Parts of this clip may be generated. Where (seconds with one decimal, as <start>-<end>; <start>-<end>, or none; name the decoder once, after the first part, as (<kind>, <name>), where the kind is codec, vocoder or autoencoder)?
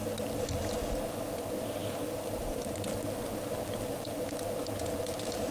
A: none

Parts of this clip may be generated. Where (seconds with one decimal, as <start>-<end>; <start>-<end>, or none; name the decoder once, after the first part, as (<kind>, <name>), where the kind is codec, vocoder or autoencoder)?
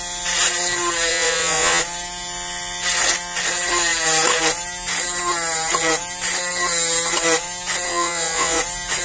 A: 1.1-1.8 (vocoder, WaveNeXt); 7.9-8.6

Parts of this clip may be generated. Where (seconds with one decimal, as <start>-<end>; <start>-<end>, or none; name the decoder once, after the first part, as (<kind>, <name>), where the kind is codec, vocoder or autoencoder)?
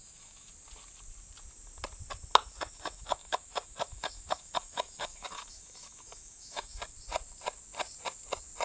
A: 0.0-0.5 (autoencoder, DAC-VAE); 2.5-6.8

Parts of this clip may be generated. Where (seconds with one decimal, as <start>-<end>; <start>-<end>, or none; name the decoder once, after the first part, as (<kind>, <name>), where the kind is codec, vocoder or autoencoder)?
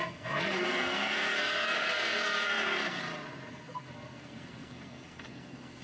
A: 0.0-3.0 (codec, SNAC); 3.5-5.8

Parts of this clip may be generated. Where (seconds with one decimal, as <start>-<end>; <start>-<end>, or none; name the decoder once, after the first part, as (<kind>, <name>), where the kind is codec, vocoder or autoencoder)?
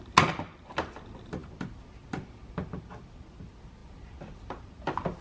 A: none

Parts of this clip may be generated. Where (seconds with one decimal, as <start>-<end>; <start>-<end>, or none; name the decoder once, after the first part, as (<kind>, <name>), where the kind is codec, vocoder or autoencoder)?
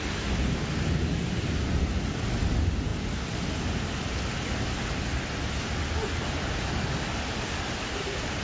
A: none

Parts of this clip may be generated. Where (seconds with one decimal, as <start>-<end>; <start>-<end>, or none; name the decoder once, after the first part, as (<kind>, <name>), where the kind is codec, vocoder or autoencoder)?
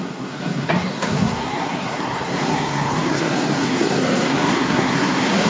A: 0.0-5.5 (codec, SNAC)